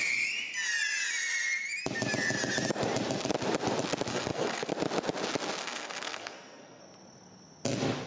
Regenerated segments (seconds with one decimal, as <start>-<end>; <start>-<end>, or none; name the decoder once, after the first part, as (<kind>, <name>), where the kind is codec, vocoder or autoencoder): 4.1-4.7 (codec, SNAC); 5.6-6.8